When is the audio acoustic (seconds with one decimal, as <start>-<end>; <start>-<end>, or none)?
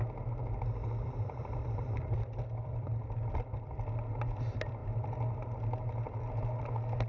0.0-0.4; 3.7-7.1